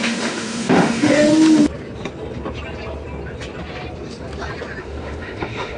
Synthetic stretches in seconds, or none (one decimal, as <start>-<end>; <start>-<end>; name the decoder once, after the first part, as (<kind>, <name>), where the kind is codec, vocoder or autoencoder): 0.0-1.3 (autoencoder, DAC-VAE); 4.8-5.8

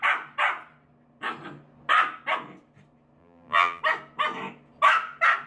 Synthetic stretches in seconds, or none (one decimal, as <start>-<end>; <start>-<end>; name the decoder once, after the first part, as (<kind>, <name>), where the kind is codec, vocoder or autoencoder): 3.2-3.8 (vocoder, BigVGAN v2)